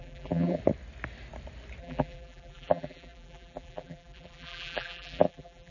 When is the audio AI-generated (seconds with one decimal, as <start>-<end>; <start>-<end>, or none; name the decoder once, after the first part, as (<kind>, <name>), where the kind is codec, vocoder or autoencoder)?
0.0-0.6 (vocoder, BigVGAN v2); 1.8-5.7